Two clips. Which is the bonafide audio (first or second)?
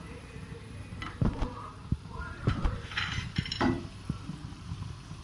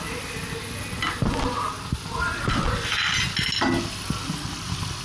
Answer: second